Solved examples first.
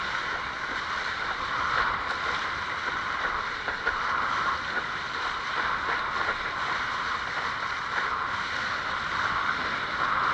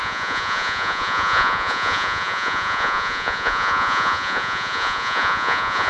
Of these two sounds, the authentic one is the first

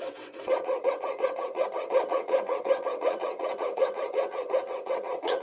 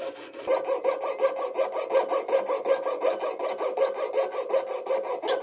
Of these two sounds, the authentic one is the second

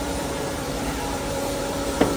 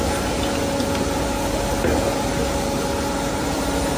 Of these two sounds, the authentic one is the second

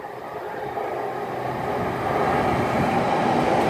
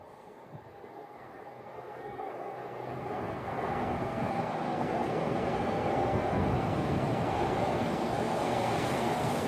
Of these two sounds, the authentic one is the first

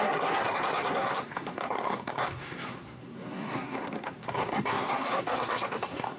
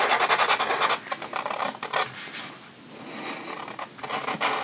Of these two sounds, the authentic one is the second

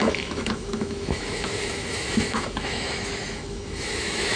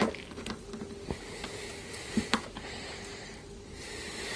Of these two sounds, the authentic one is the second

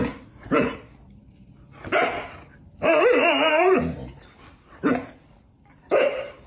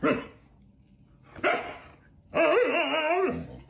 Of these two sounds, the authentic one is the second